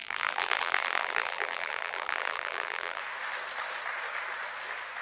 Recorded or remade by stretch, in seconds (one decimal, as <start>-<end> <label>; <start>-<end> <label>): 0.0-3.0 remade; 3.0-5.0 recorded